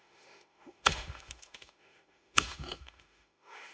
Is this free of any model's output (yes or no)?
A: no